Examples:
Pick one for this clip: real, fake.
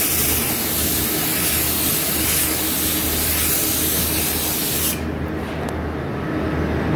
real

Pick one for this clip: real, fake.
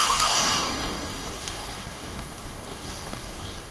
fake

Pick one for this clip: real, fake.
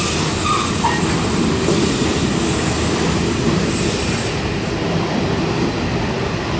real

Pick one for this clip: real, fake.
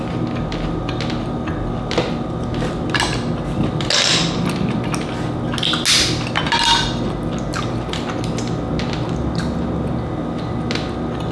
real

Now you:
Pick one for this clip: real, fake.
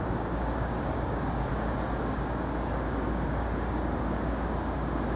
fake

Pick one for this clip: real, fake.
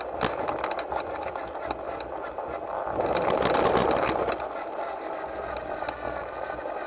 real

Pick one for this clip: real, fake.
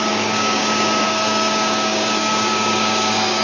fake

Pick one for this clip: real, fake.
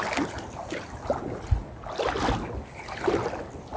real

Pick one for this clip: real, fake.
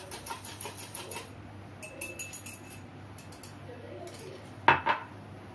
real